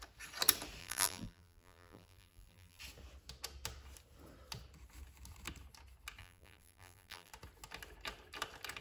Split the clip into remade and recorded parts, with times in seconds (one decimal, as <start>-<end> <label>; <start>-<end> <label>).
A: 0.0-0.8 recorded; 0.8-2.8 remade; 2.8-6.2 recorded; 6.2-7.3 remade; 7.3-8.8 recorded